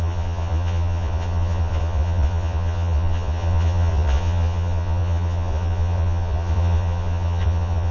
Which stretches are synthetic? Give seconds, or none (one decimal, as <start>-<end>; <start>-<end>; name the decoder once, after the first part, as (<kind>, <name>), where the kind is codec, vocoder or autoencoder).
0.0-7.9 (vocoder, Vocos)